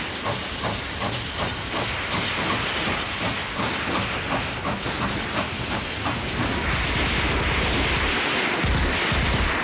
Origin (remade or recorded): recorded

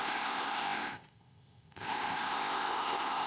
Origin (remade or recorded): remade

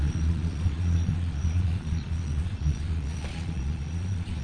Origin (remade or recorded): remade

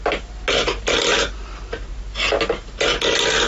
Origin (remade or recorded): recorded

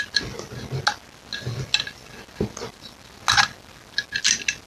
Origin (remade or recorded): recorded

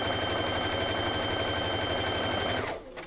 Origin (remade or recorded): recorded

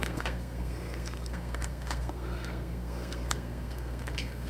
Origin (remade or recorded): remade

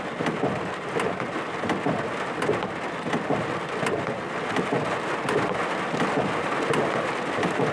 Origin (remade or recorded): recorded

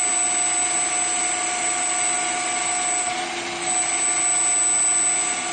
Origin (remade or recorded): recorded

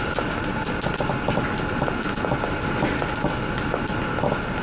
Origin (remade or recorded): recorded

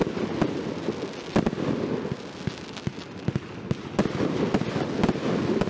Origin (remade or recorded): recorded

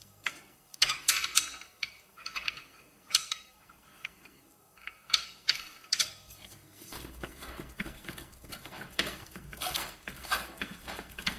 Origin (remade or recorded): remade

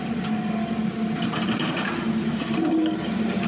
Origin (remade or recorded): recorded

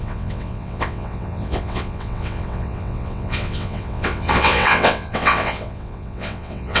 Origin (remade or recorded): remade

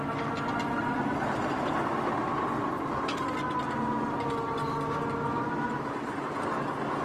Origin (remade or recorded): recorded